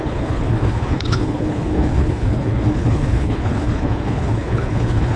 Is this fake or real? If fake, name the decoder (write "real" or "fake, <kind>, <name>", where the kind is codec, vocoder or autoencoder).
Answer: fake, codec, HILCodec